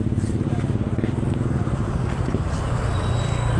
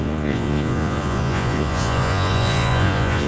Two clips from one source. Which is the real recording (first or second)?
first